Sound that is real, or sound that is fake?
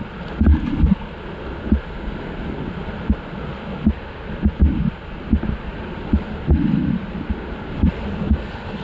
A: real